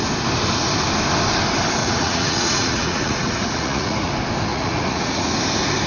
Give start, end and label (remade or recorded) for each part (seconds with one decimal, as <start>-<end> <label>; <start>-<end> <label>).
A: 0.0-1.8 recorded; 1.8-4.1 remade; 4.1-4.5 recorded; 4.5-5.3 remade; 5.3-5.9 recorded